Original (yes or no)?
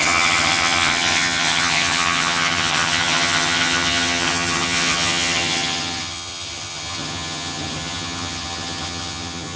no